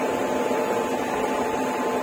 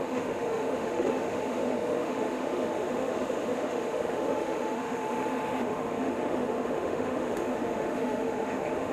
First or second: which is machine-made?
second